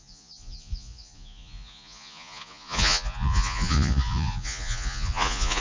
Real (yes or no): no